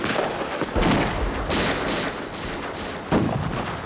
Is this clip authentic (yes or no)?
yes